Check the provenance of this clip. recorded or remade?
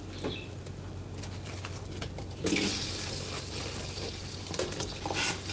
recorded